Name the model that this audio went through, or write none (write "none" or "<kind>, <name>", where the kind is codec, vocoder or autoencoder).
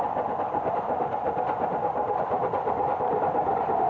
vocoder, BigVGAN v2